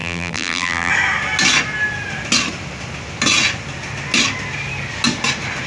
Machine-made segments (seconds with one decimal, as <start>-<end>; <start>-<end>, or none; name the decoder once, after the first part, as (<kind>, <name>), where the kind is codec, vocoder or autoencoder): 0.0-0.9 (vocoder, BigVGAN v2)